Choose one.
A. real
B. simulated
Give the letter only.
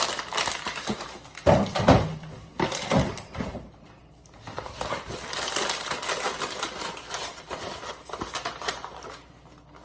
A